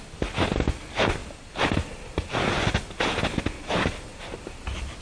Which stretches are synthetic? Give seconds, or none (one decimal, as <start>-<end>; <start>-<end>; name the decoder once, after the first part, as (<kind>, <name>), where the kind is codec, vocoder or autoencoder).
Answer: none